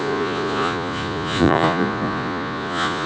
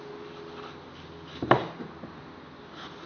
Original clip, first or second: second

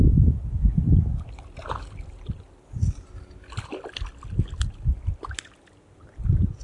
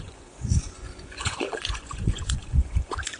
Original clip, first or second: first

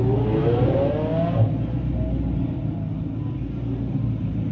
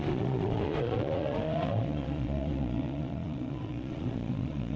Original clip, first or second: first